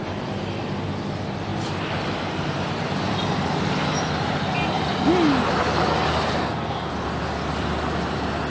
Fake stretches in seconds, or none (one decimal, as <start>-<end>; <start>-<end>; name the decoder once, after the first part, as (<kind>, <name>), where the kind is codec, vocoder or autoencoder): 6.4-6.9 (codec, SNAC)